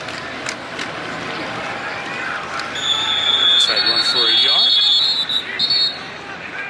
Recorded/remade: recorded